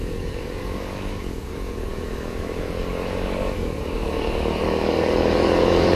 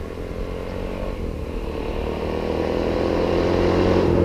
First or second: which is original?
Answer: second